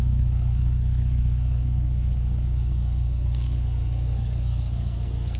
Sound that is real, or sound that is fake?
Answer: fake